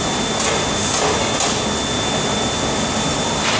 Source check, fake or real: real